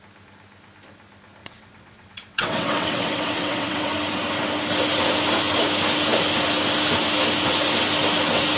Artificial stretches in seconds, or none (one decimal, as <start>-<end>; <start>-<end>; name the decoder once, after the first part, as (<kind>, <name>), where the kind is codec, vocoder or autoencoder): 1.4-3.9 (vocoder, WaveNeXt)